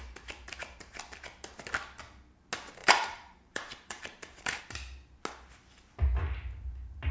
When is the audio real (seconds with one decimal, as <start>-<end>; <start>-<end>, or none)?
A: 0.0-0.6; 1.2-2.8; 4.6-7.1